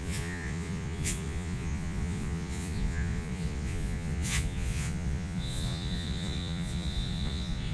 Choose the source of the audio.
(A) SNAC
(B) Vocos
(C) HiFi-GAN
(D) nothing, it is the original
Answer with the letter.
B